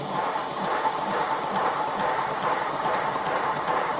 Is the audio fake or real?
fake